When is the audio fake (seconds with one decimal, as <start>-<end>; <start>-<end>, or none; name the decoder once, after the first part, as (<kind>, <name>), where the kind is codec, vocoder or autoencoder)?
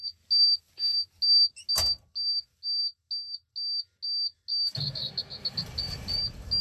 none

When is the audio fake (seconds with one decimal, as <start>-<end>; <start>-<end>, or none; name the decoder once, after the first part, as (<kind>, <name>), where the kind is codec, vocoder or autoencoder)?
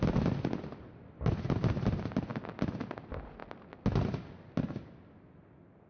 none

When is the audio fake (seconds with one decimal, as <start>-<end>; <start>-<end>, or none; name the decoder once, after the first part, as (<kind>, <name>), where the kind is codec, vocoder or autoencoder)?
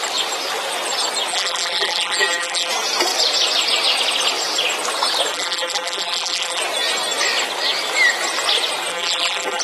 1.3-2.7 (vocoder, BigVGAN v2); 5.3-6.6; 8.9-9.6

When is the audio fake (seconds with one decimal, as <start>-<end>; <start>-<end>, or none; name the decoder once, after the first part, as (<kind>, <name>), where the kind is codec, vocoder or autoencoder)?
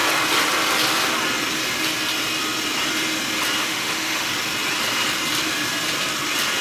3.6-4.3 (autoencoder, DAC-VAE)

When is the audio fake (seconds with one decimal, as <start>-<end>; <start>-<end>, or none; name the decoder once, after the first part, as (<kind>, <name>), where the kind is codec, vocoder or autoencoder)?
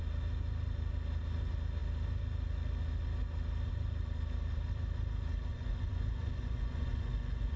5.5-7.6 (vocoder, Vocos)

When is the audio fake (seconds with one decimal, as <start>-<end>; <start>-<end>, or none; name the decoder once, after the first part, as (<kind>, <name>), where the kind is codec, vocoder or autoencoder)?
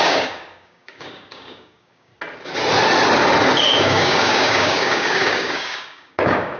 0.0-2.1 (codec, DAC); 3.8-6.6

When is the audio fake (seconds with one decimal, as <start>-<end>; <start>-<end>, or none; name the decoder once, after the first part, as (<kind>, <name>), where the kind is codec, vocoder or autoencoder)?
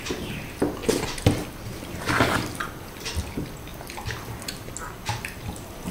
0.8-2.1 (vocoder, BigVGAN v2)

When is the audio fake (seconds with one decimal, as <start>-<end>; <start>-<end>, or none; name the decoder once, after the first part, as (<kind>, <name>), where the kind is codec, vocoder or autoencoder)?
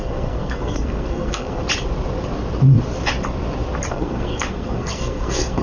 0.0-1.6 (codec, SNAC); 3.9-5.6